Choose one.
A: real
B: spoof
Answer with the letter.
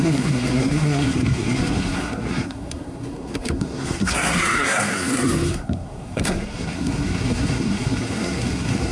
B